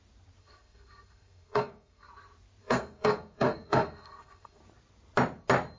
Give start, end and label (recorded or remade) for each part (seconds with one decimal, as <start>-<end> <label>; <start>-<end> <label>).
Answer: 0.0-0.4 recorded; 0.4-2.1 remade; 2.1-2.6 recorded; 2.6-4.6 remade; 4.6-5.8 recorded